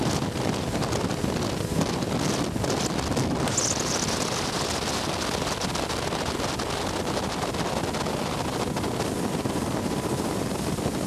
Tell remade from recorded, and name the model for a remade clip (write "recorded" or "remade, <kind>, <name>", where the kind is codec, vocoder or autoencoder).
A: recorded